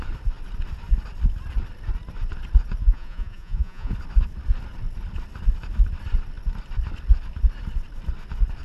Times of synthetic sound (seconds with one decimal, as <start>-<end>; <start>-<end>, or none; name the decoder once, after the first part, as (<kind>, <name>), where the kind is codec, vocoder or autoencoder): 2.8-3.9 (vocoder, Vocos)

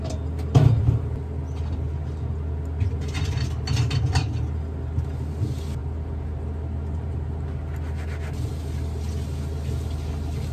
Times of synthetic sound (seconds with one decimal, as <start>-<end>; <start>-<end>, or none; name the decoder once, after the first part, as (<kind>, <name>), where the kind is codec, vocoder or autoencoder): none

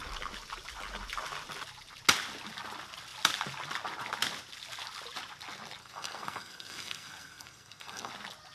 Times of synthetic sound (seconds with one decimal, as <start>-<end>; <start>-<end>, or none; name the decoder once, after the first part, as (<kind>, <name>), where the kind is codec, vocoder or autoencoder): 5.8-8.1 (codec, SNAC)